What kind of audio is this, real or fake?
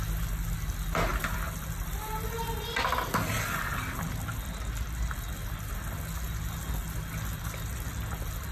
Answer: real